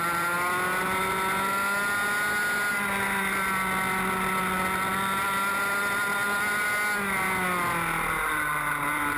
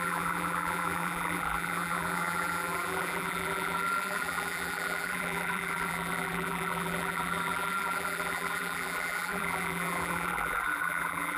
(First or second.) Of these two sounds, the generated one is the second